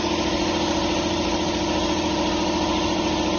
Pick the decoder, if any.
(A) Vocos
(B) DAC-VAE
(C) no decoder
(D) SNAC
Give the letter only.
C